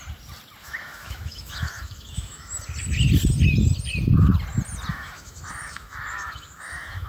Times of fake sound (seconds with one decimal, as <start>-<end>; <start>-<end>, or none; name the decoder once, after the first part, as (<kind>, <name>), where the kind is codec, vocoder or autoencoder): 0.6-2.5 (autoencoder, DAC-VAE); 4.9-7.1